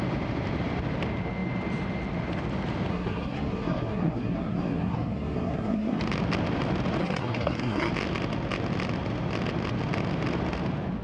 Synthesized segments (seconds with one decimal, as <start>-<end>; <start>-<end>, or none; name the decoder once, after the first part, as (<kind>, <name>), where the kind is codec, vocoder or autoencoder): 2.9-6.0 (codec, SNAC); 7.0-7.9